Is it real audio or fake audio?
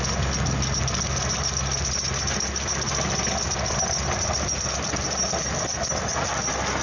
real